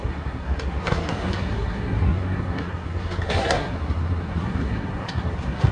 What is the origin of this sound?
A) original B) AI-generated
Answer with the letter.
B